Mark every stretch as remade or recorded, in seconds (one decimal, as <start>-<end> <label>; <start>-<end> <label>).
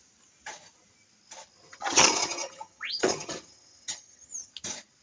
0.0-1.7 recorded; 1.7-4.5 remade; 4.5-5.0 recorded